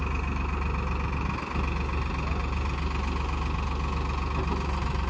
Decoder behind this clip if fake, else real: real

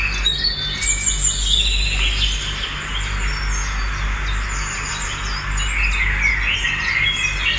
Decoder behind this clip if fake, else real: real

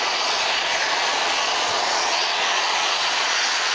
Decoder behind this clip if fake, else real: fake, vocoder, Vocos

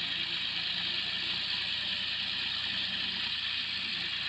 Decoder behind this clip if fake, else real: real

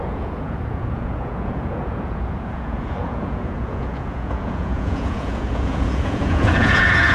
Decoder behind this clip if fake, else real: fake, vocoder, Vocos